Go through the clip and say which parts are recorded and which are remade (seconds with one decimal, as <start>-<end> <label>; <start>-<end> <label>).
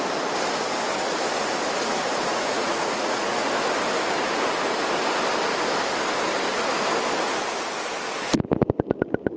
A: 0.0-2.3 recorded; 2.3-3.5 remade; 3.5-9.4 recorded